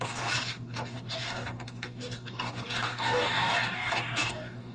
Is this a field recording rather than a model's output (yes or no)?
no